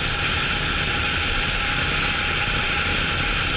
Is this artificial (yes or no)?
no